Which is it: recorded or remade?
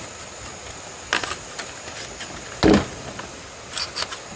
recorded